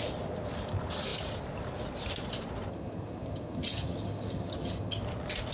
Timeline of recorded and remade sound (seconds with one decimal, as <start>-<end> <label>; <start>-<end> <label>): 0.0-2.7 recorded; 2.7-5.0 remade; 5.0-5.5 recorded